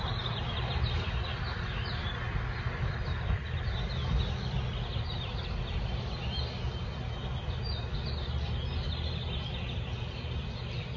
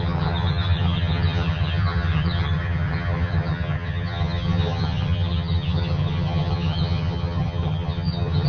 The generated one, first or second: second